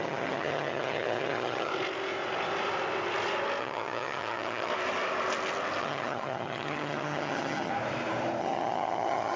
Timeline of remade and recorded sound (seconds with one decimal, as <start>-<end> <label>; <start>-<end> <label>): 0.0-1.7 remade; 1.7-3.6 recorded; 3.6-4.7 remade; 4.7-5.8 recorded; 5.8-7.7 remade; 7.7-8.4 recorded; 8.4-9.4 remade